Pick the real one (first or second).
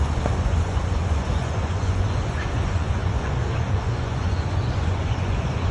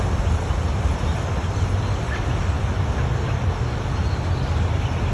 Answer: second